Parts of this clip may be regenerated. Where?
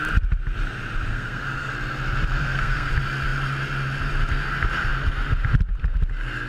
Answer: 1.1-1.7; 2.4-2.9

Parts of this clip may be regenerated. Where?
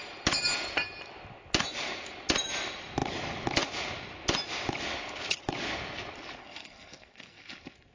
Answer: 6.4-7.5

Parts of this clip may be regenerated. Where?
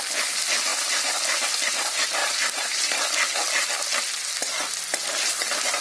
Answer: none